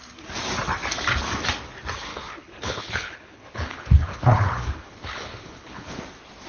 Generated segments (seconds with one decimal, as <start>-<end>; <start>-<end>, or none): 2.1-6.0